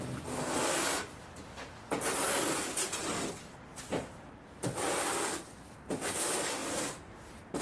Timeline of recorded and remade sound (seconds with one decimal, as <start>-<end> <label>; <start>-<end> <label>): 0.0-3.7 recorded; 3.7-4.3 remade; 4.3-6.6 recorded; 6.6-7.6 remade